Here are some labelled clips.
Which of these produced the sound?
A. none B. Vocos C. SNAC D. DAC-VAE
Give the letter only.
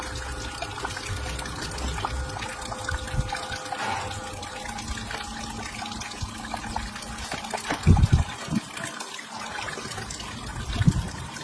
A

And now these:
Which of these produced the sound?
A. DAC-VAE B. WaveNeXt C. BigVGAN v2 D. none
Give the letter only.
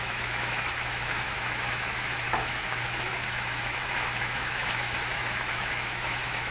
A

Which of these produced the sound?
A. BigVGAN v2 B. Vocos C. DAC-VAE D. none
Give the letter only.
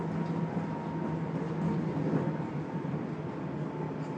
D